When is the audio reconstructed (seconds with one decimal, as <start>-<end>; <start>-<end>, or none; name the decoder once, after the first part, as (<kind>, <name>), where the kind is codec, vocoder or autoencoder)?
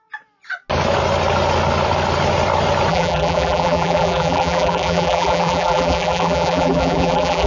2.9-7.5 (vocoder, BigVGAN v2)